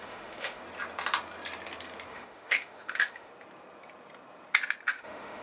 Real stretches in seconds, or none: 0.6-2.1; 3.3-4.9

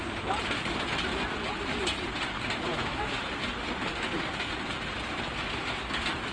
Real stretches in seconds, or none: 0.0-2.7; 3.2-6.3

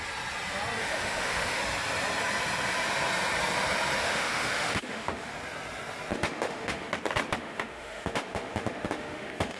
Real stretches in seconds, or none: 0.0-0.8; 1.6-4.0; 5.3-6.1; 6.9-7.4